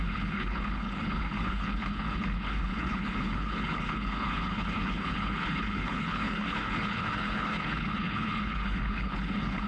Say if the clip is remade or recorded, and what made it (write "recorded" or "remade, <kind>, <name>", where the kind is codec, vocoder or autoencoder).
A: remade, codec, HILCodec